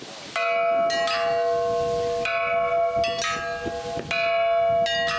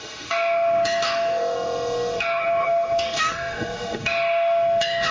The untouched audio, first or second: first